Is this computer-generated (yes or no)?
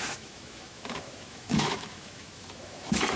yes